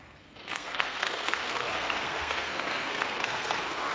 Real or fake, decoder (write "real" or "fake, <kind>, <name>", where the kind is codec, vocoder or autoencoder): fake, codec, SNAC